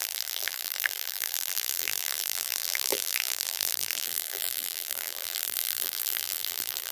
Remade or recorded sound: remade